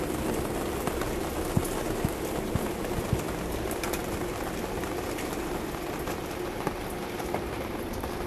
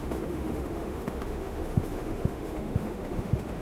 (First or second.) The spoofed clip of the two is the second